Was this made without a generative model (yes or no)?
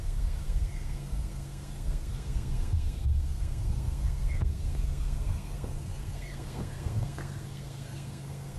no